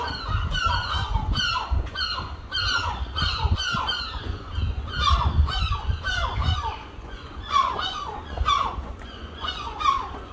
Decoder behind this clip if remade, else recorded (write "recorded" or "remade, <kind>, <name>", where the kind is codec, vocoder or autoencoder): remade, vocoder, Vocos